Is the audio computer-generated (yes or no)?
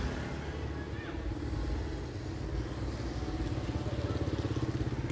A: no